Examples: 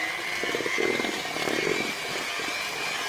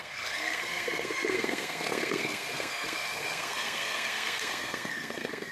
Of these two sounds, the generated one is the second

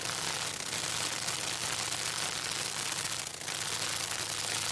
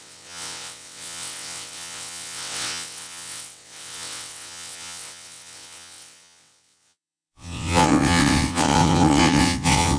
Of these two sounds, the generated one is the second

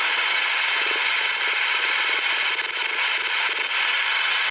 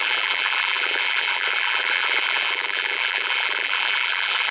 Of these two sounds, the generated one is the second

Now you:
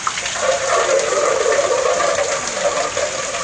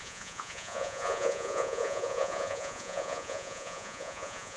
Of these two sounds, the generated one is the second